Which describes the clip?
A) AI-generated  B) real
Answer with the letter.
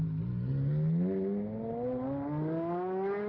B